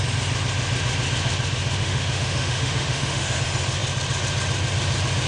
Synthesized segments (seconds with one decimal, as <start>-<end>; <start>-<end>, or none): 1.8-3.4